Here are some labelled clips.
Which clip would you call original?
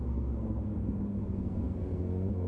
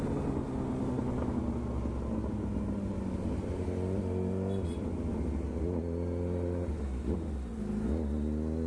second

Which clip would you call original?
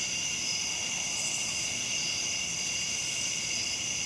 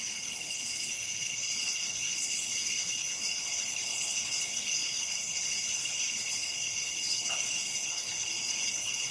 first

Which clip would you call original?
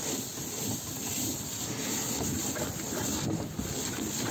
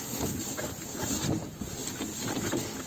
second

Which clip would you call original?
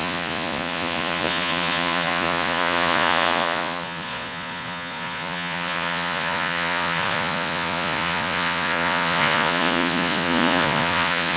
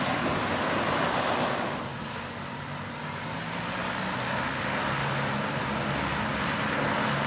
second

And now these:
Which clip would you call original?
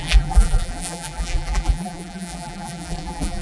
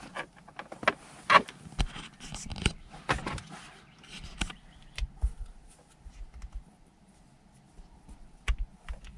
second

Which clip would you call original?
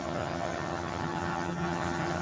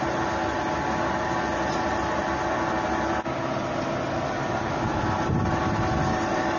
second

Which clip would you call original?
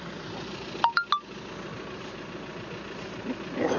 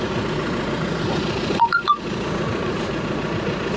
first